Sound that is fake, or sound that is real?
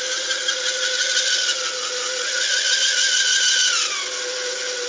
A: real